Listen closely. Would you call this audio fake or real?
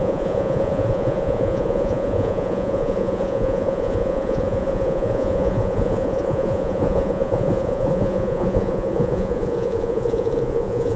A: fake